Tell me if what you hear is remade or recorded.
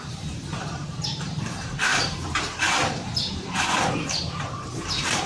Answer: remade